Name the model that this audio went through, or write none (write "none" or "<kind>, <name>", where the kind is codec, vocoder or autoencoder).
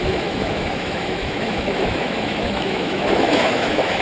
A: autoencoder, DAC-VAE